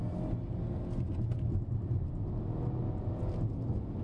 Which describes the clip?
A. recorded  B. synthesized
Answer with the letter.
A